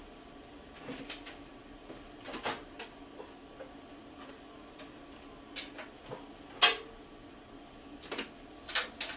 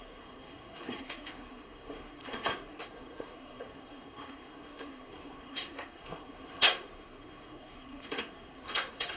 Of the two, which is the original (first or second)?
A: first